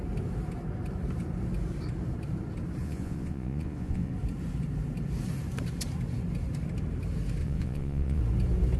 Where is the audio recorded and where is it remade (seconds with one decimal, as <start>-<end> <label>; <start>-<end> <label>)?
0.0-2.8 recorded; 2.8-4.1 remade; 4.1-7.4 recorded; 7.4-8.2 remade; 8.2-8.8 recorded